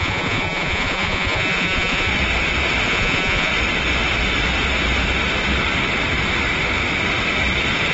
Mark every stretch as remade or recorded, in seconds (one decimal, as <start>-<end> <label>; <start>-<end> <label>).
0.0-2.1 remade; 2.1-2.9 recorded; 2.9-3.5 remade; 3.5-7.9 recorded